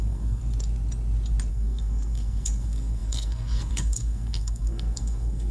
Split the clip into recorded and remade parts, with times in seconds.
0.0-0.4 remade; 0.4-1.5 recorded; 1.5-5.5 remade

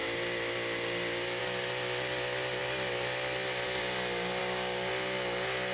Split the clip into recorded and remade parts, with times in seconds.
0.0-4.4 recorded; 4.4-4.9 remade; 4.9-5.7 recorded

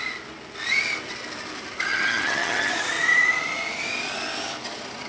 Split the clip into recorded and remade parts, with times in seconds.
0.0-1.9 recorded; 1.9-2.7 remade; 2.7-5.1 recorded

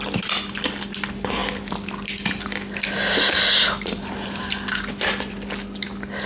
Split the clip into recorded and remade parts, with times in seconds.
0.0-6.3 recorded

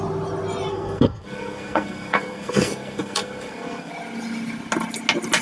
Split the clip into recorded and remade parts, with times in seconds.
0.0-0.7 recorded; 0.7-3.9 remade; 3.9-5.4 recorded

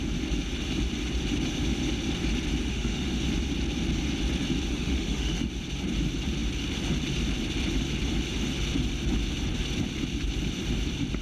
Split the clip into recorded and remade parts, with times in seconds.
0.0-2.6 recorded; 2.6-3.2 remade; 3.2-4.7 recorded; 4.7-5.5 remade; 5.5-11.2 recorded